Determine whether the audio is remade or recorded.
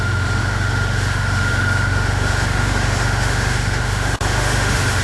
remade